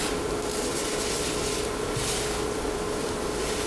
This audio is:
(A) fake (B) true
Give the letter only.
B